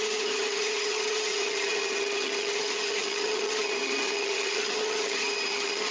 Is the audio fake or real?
fake